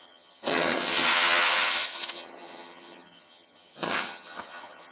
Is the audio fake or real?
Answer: fake